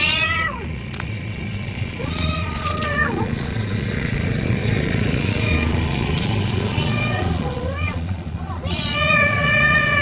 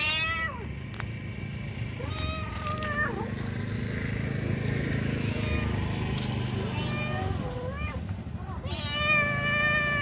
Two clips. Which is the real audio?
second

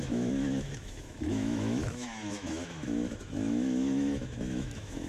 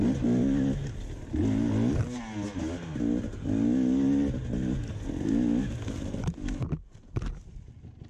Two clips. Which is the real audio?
second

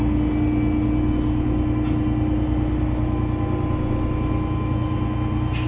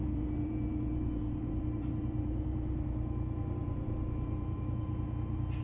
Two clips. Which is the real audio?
first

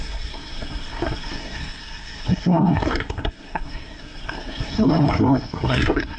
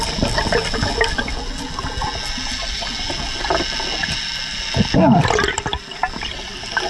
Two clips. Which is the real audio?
second